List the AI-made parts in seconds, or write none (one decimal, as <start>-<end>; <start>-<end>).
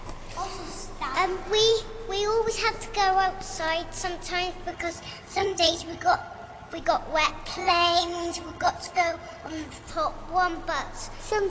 4.7-6.8; 7.5-9.9